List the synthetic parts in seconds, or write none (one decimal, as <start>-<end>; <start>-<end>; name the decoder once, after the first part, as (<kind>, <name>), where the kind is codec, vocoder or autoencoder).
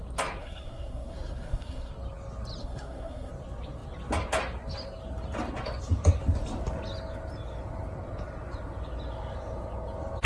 0.4-1.9 (codec, SNAC); 2.6-3.3